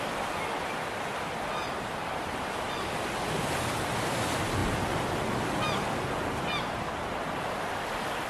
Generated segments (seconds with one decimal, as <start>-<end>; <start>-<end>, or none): none